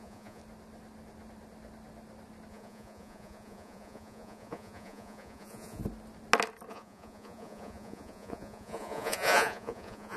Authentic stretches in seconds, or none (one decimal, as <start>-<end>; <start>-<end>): 0.4-2.5; 5.8-6.7

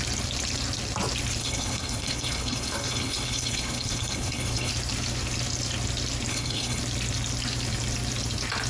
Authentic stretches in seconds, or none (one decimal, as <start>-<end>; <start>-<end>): 0.0-1.4; 4.7-6.3; 6.8-8.7

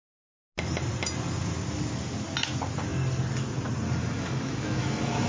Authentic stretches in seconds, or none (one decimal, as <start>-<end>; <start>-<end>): 0.0-4.0

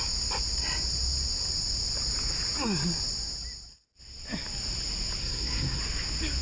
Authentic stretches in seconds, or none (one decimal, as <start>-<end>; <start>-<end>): 0.0-5.2; 5.8-6.4

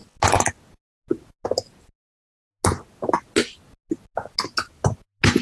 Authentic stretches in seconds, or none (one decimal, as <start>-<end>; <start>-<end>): 0.0-5.4

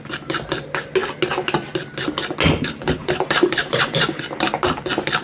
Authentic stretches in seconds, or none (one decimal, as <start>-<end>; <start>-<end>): 0.0-3.0; 4.2-5.2

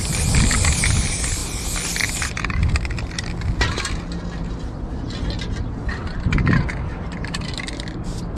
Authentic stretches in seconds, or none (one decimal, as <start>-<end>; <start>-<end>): 1.4-5.9

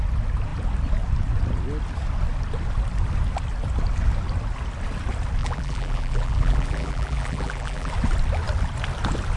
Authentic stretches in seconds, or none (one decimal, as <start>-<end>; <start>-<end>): 0.0-5.4; 7.9-9.4